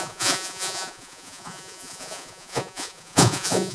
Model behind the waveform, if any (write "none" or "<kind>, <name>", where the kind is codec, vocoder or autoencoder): vocoder, Vocos